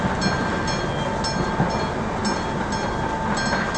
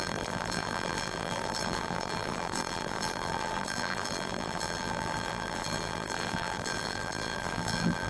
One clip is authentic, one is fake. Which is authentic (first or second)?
first